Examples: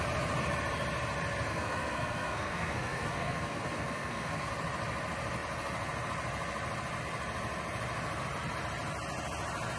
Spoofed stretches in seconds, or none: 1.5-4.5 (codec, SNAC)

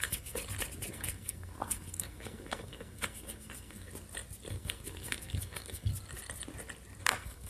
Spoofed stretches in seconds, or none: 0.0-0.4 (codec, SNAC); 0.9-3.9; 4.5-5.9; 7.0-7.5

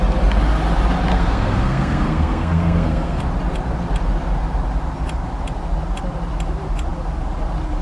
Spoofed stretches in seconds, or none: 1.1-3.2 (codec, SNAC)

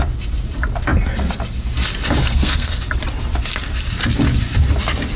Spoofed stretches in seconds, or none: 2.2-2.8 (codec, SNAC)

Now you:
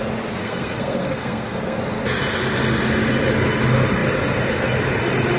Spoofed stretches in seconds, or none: 0.4-1.8 (codec, SNAC)

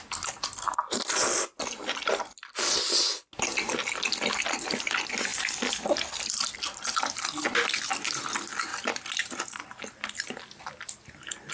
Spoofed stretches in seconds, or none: none

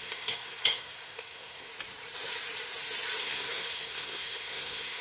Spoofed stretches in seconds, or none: 0.0-1.7 (codec, SNAC); 3.2-5.0